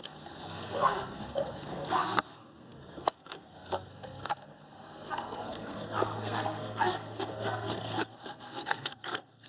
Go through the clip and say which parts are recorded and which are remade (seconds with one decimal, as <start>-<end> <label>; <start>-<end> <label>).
0.0-9.5 remade